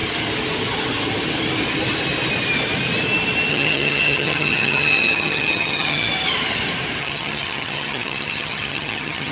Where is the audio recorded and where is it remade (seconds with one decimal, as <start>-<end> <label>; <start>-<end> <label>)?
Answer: 0.0-3.5 recorded; 3.5-6.1 remade; 6.1-7.0 recorded; 7.0-9.3 remade